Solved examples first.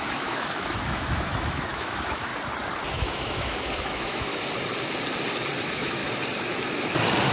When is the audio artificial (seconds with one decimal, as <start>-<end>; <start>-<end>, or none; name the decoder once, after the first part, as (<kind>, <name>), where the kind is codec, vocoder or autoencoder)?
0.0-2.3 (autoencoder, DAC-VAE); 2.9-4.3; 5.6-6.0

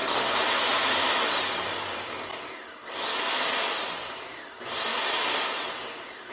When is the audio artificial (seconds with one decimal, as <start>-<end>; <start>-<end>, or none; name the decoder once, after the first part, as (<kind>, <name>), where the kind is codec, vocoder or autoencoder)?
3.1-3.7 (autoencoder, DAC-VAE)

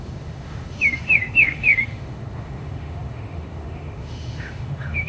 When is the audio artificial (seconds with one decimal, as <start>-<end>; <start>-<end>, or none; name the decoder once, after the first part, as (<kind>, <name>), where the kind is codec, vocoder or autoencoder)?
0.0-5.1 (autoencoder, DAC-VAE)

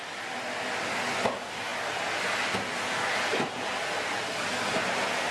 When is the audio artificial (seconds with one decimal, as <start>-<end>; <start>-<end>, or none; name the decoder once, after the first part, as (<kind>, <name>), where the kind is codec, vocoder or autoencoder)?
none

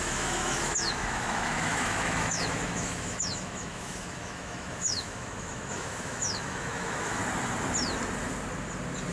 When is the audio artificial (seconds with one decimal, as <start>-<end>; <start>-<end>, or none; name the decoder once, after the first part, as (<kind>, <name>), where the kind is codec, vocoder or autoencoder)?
0.0-7.2 (autoencoder, DAC-VAE)

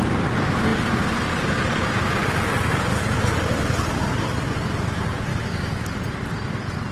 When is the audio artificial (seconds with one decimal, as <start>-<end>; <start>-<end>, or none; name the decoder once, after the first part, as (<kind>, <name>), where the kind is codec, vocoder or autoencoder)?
5.3-5.9 (autoencoder, DAC-VAE)

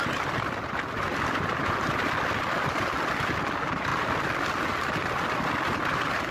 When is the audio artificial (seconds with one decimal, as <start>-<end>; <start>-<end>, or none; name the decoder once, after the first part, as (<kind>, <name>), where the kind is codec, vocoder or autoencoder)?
none